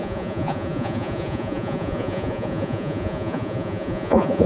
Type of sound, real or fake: fake